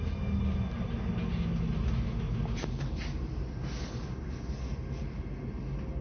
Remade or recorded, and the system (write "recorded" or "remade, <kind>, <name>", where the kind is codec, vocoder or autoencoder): recorded